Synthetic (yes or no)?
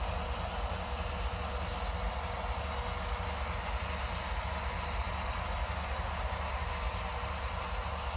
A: no